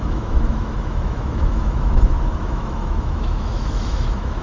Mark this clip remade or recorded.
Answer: remade